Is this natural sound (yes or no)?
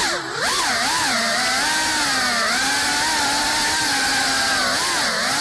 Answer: yes